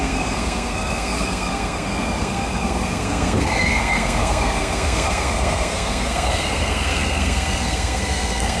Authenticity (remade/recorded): remade